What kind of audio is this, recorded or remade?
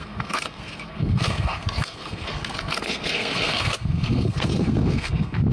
remade